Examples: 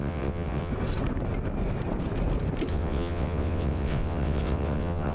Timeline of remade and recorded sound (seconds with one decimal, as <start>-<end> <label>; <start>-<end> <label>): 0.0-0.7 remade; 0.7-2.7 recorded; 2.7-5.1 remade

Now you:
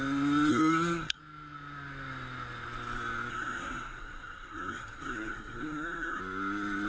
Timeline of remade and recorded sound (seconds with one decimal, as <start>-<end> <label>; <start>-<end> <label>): 0.0-0.5 recorded; 0.5-1.2 remade; 1.2-3.3 recorded; 3.3-6.2 remade; 6.2-6.9 recorded

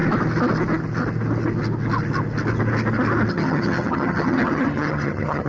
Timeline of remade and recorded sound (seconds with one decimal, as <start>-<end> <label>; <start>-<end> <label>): 0.0-3.3 recorded; 3.3-5.5 remade

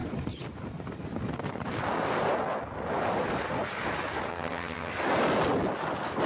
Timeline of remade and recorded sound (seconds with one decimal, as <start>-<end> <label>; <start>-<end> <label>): 0.0-4.3 recorded; 4.3-4.9 remade; 4.9-6.3 recorded

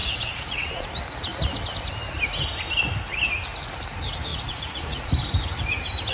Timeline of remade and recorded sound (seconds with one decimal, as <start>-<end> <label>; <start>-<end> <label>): 0.0-0.9 remade; 0.9-4.3 recorded; 4.3-5.1 remade; 5.1-6.1 recorded